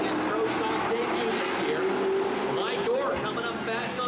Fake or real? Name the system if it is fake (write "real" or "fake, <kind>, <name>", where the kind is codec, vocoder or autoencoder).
real